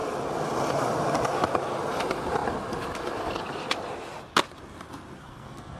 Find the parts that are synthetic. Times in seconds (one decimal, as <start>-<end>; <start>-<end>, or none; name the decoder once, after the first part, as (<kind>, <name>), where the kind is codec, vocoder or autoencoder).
5.2-5.8 (codec, SNAC)